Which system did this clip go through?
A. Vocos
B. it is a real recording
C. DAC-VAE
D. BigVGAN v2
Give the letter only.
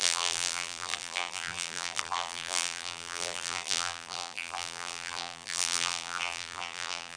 D